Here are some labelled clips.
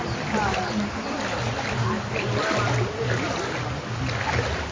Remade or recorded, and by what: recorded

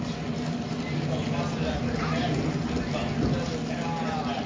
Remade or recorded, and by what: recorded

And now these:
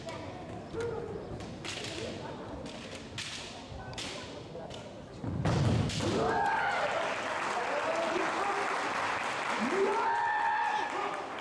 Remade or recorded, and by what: recorded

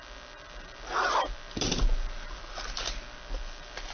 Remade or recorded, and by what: recorded